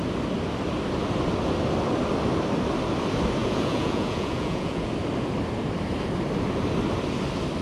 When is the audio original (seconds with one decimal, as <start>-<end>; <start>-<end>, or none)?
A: 0.0-3.4; 4.9-7.6